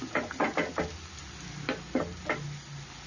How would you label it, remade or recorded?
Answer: recorded